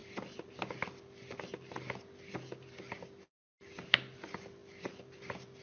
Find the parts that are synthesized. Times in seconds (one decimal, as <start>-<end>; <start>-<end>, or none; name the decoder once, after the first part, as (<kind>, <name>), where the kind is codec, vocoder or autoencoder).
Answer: none